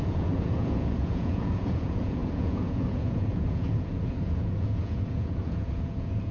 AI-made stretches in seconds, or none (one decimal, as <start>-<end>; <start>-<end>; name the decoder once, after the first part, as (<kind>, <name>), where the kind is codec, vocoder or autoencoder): 0.0-6.3 (vocoder, Vocos)